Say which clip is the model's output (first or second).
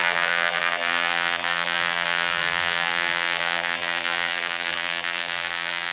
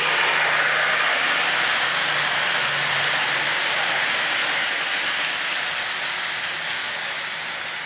first